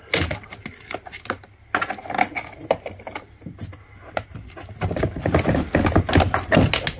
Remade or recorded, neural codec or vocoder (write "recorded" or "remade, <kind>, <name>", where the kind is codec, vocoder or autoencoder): recorded